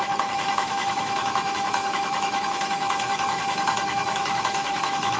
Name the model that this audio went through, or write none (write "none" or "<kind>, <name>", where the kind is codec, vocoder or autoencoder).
autoencoder, DAC-VAE